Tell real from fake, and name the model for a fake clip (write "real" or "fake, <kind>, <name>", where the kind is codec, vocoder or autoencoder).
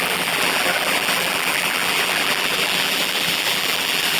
fake, vocoder, BigVGAN v2